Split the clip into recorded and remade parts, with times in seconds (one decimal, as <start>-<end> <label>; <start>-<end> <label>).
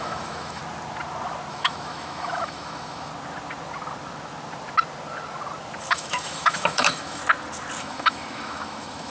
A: 0.0-0.6 remade; 0.6-1.5 recorded; 1.5-3.1 remade; 3.1-5.9 recorded; 5.9-7.2 remade; 7.2-7.8 recorded; 7.8-9.1 remade